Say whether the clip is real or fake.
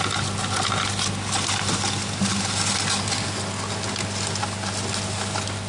real